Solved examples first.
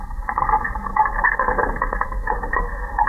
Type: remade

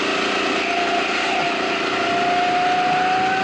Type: recorded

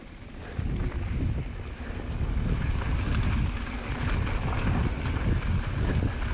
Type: recorded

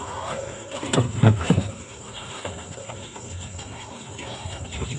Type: remade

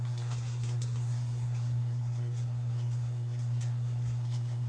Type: remade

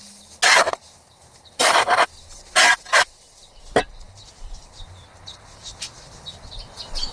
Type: recorded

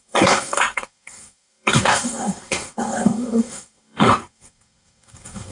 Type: remade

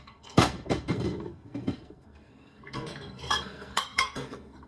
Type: remade